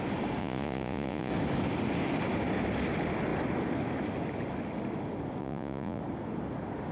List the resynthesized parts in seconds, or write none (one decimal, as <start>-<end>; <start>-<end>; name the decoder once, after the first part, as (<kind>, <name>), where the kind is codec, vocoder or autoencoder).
0.4-1.3 (vocoder, Vocos); 5.4-6.0

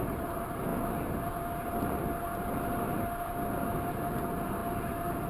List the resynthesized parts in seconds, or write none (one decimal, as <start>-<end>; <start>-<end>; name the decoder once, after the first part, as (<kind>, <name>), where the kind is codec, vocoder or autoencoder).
0.0-0.7 (vocoder, BigVGAN v2); 3.9-4.6